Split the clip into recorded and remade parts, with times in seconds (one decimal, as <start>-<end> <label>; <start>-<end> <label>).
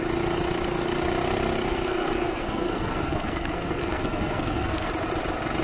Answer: 0.0-1.7 recorded; 1.7-4.9 remade; 4.9-5.6 recorded